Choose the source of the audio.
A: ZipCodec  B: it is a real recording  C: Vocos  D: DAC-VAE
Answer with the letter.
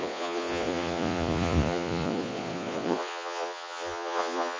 C